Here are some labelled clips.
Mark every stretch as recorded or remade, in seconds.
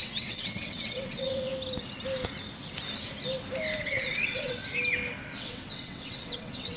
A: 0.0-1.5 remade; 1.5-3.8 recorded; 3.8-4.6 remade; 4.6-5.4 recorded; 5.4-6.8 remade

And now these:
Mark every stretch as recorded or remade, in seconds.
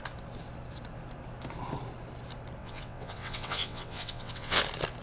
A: 0.0-2.6 recorded; 2.6-4.6 remade; 4.6-5.0 recorded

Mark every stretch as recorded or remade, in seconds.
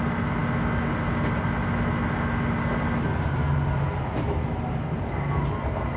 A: 0.0-6.0 recorded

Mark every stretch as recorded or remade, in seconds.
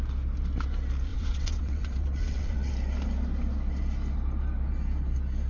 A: 0.0-1.1 recorded; 1.1-2.7 remade; 2.7-5.5 recorded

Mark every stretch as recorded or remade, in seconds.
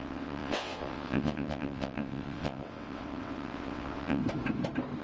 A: 0.0-4.2 remade; 4.2-5.0 recorded